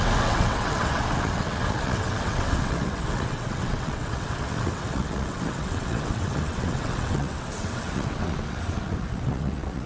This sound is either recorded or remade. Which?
remade